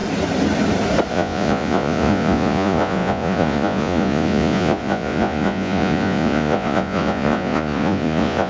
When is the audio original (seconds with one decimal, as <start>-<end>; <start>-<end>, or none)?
0.0-1.1